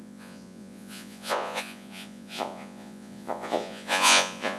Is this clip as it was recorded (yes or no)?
no